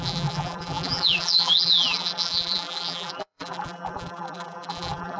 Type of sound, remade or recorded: remade